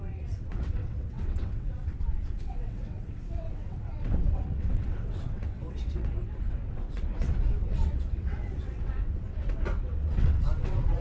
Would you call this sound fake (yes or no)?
yes